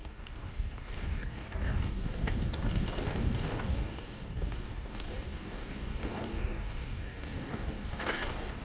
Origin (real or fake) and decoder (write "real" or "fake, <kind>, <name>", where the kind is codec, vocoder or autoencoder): fake, codec, DAC